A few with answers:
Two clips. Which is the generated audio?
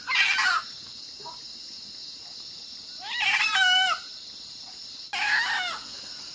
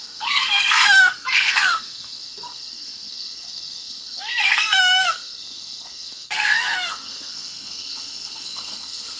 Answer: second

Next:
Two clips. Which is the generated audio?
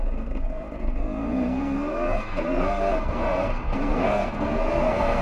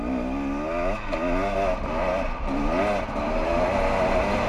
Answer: first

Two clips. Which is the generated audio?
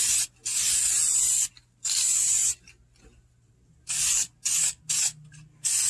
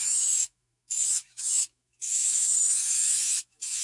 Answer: second